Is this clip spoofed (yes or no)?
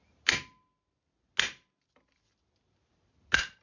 no